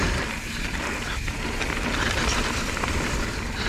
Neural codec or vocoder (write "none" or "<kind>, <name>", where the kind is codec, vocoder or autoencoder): vocoder, BigVGAN v2